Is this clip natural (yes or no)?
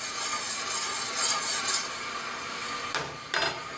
yes